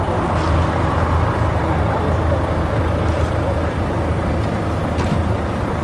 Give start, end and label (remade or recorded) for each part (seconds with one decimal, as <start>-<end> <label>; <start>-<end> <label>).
0.0-5.8 recorded